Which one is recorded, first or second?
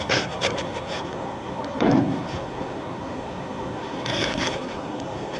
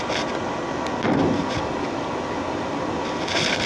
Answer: second